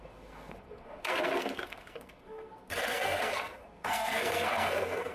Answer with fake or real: fake